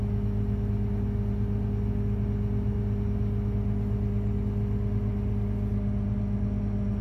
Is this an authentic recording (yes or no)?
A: yes